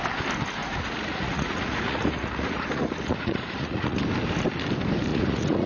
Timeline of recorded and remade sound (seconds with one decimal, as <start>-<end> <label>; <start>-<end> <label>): 0.0-0.6 recorded; 0.6-4.0 remade; 4.0-5.1 recorded; 5.1-5.7 remade